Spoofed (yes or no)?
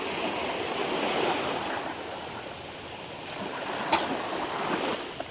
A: no